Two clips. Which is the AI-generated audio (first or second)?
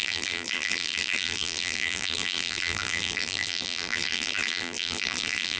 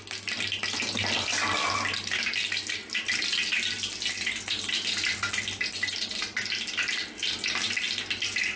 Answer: first